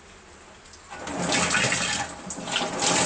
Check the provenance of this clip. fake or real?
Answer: real